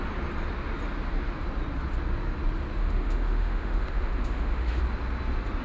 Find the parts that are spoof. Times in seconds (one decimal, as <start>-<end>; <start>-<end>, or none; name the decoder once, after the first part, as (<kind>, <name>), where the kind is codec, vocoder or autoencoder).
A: 2.8-4.8 (autoencoder, DAC-VAE)